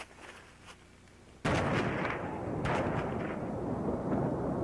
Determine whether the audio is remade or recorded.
recorded